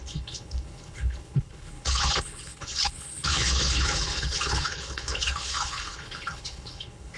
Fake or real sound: fake